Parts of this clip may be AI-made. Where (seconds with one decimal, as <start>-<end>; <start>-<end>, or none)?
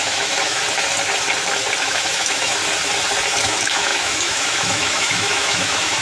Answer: 0.0-0.6; 1.8-2.6; 3.4-6.0